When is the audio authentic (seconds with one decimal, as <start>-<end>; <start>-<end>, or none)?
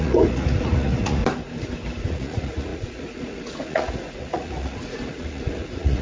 1.2-2.1